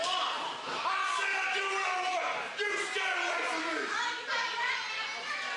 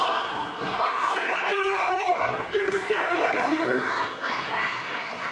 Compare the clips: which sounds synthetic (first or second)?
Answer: second